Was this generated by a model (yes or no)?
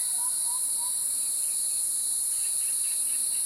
no